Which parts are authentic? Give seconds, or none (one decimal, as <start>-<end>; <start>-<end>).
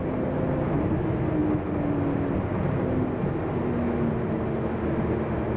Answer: 0.0-5.6